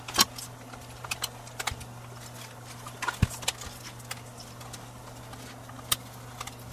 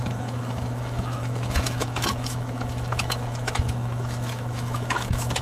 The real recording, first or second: first